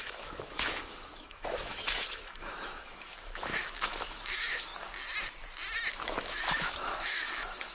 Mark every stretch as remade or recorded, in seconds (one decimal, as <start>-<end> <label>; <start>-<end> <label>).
0.0-4.7 remade; 4.7-5.9 recorded; 5.9-7.7 remade